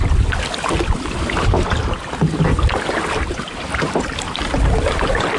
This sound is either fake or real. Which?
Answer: real